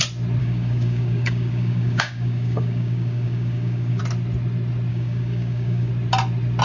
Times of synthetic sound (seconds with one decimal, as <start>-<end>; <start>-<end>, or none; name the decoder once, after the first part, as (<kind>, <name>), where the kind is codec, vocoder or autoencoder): 0.4-4.0 (codec, DAC); 4.9-5.9